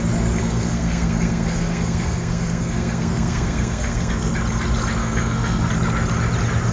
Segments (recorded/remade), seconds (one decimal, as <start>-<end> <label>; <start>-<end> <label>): 0.0-0.4 recorded; 0.4-4.3 remade; 4.3-5.0 recorded; 5.0-5.7 remade; 5.7-6.7 recorded